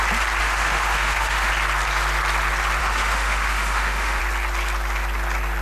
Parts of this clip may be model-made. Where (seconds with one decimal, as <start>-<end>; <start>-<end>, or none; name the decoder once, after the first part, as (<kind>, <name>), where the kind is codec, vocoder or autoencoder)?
0.4-1.5 (autoencoder, DAC-VAE); 2.8-4.2